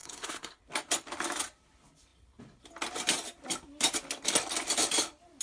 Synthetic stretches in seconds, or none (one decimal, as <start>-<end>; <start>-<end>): 0.0-0.6